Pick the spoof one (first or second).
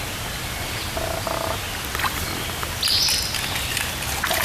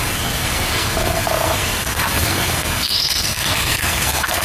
second